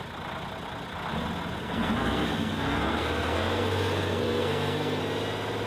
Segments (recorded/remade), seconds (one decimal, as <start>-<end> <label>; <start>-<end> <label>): 0.0-1.6 recorded; 1.6-5.0 remade; 5.0-5.7 recorded